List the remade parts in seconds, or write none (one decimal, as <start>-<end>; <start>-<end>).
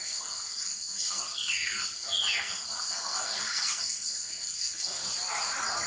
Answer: 0.0-5.0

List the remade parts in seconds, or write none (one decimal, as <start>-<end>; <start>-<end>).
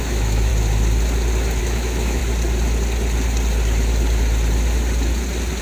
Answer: 0.0-0.5; 1.6-2.2